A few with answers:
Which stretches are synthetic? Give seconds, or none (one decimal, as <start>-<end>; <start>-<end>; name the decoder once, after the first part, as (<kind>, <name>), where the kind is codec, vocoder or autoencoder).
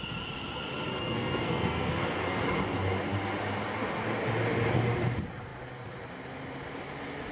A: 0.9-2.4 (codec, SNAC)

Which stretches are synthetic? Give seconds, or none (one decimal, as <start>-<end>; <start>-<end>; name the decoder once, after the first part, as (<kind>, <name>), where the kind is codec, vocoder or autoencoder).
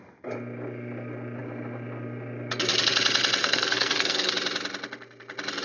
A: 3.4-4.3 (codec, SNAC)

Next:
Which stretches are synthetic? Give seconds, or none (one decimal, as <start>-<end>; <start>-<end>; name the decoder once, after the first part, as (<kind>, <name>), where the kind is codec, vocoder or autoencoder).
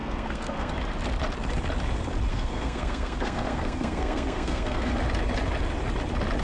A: 0.0-0.7 (codec, SNAC); 2.3-4.9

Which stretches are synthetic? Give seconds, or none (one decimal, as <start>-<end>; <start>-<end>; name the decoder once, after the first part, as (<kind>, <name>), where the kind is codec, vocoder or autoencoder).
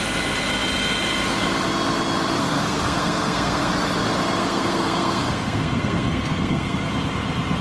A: 2.4-3.7 (codec, SNAC); 4.4-6.9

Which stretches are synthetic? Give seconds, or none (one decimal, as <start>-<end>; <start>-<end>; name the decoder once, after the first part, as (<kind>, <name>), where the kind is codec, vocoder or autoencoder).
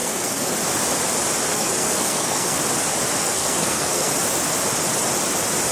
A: 0.0-0.5 (codec, SNAC); 1.5-2.6; 3.2-4.1